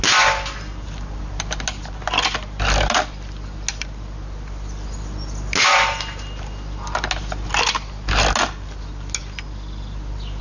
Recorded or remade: recorded